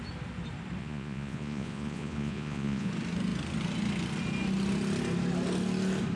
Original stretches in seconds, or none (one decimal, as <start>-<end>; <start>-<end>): 0.0-0.8; 2.9-6.2